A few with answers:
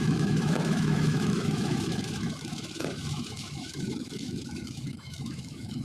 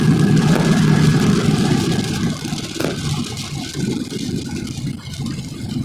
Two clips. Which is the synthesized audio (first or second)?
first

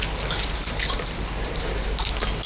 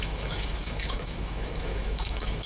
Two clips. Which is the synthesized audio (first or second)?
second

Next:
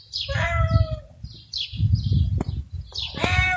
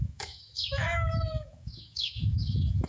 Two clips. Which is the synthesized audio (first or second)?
second